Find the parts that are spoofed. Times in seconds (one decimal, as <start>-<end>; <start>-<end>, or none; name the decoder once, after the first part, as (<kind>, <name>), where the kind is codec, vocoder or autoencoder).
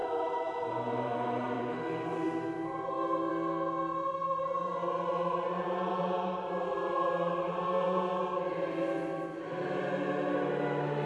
0.0-1.6 (vocoder, BigVGAN v2); 2.1-3.3; 4.2-7.6